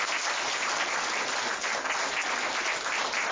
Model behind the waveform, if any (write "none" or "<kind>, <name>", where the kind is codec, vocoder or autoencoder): none